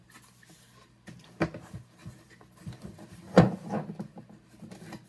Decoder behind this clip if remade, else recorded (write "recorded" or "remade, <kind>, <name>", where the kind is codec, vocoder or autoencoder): recorded